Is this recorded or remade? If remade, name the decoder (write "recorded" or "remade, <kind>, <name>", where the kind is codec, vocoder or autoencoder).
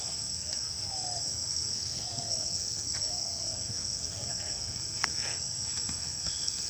remade, codec, SNAC